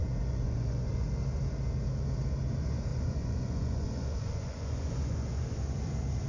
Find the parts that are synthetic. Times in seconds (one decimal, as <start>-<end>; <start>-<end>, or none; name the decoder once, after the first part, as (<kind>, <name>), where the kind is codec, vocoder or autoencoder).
0.0-1.1 (vocoder, Vocos); 2.9-5.5